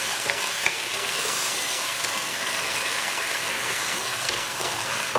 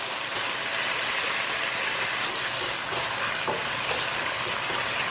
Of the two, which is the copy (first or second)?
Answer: first